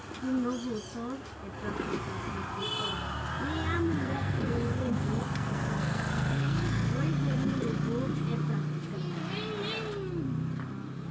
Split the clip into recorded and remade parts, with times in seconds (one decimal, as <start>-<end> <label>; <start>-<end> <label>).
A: 0.0-4.0 recorded; 4.0-7.0 remade; 7.0-11.1 recorded